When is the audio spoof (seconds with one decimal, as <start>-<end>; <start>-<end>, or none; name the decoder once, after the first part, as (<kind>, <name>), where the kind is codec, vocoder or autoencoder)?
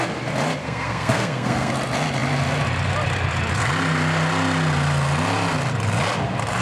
0.6-1.7 (codec, SNAC)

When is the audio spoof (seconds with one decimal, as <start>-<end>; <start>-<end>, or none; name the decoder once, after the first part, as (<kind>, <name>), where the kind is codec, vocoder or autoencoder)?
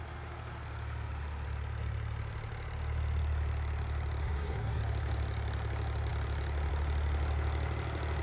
4.2-4.8 (codec, SNAC)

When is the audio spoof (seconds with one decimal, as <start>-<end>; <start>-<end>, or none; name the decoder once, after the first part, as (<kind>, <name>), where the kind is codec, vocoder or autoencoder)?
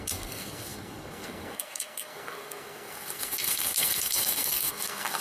0.0-5.2 (codec, SNAC)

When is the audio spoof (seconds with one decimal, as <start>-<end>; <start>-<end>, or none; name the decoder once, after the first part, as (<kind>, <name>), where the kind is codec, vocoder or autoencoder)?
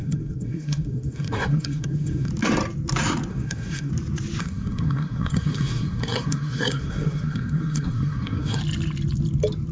0.0-2.3 (codec, SNAC); 3.3-3.9; 4.4-8.6